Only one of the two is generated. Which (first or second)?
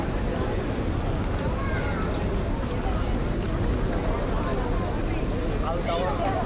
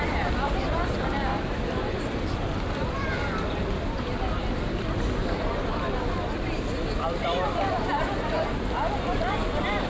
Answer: second